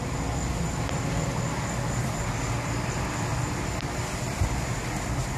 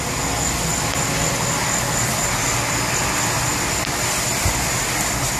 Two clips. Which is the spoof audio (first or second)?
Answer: first